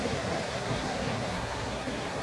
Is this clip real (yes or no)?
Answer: no